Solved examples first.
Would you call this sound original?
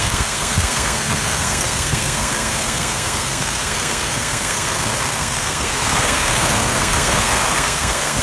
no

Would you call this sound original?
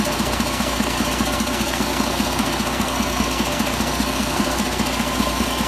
no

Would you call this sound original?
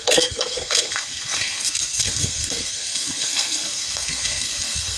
no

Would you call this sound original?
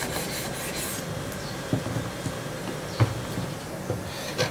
yes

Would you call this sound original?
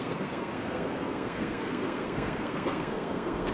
no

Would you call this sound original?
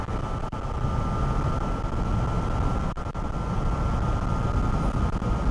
yes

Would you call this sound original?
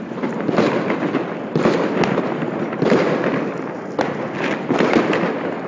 yes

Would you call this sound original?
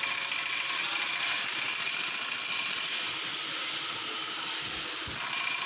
yes